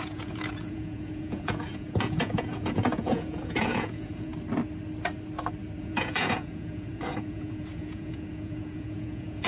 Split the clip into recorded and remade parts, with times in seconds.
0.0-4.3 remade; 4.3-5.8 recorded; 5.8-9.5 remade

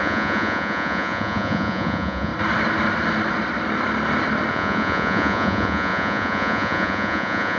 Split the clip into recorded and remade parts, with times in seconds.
0.0-2.3 remade; 2.3-4.5 recorded; 4.5-7.6 remade

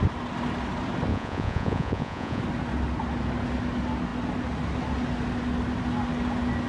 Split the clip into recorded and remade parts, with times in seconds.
0.0-1.1 recorded; 1.1-2.4 remade; 2.4-6.7 recorded

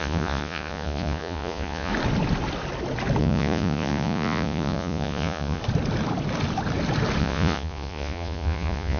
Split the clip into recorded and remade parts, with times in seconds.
0.0-1.9 remade; 1.9-3.2 recorded; 3.2-5.6 remade; 5.6-7.2 recorded; 7.2-9.0 remade